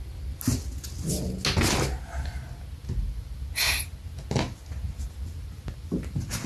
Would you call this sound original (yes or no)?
yes